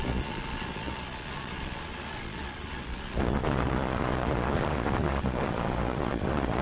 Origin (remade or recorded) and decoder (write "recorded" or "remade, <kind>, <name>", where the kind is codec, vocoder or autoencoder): remade, vocoder, Vocos